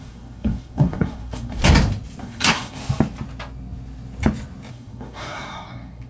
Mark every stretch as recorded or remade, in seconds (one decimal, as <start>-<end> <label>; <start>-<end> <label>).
0.0-1.6 remade; 1.6-2.2 recorded; 2.2-2.8 remade; 2.8-4.7 recorded; 4.7-6.1 remade